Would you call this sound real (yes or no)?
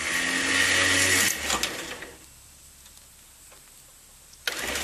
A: yes